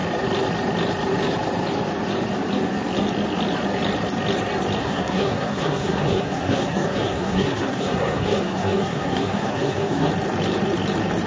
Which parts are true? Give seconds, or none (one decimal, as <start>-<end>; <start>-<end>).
0.0-4.8; 10.1-11.3